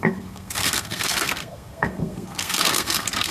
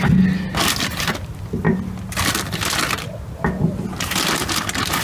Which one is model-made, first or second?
first